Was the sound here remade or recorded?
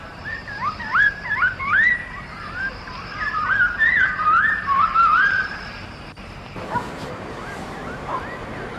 remade